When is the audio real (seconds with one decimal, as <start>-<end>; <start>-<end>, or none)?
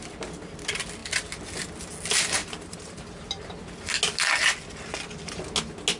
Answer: 0.0-2.4; 3.0-6.0